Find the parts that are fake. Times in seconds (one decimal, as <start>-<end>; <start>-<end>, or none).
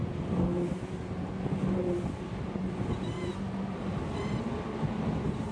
none